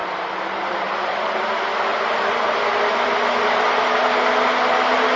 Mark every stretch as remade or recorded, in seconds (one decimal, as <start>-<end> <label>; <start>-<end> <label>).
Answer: 0.0-1.0 remade; 1.0-1.9 recorded; 1.9-3.9 remade; 3.9-5.2 recorded